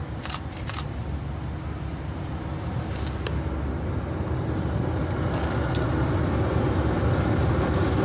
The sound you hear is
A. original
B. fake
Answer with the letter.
A